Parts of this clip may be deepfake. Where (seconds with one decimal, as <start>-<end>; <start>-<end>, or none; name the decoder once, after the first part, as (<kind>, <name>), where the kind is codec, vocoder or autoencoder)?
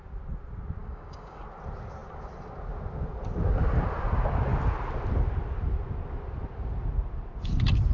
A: 0.8-1.4 (codec, DAC)